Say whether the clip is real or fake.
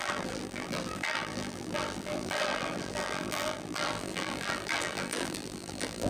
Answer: fake